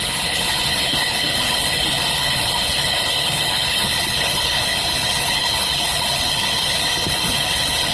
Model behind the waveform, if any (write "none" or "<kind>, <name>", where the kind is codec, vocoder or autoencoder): codec, HILCodec